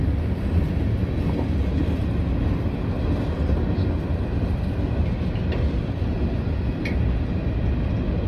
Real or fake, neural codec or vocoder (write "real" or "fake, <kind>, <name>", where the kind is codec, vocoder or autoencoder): real